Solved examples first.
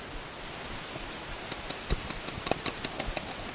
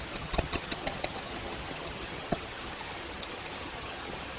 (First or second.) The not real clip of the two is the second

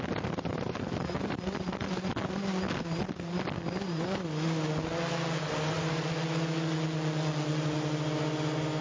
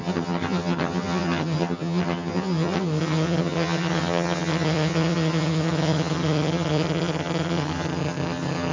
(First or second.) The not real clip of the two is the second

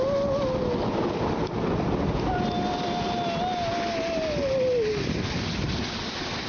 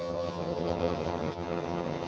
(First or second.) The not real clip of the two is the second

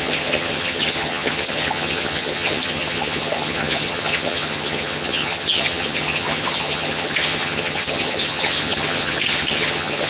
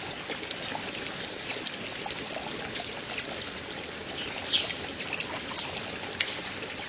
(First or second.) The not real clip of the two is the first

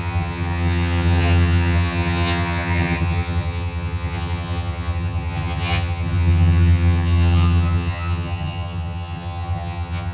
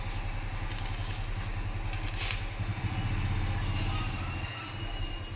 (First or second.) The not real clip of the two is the first